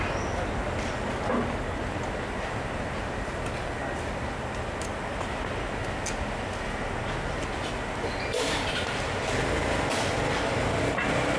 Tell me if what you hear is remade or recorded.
recorded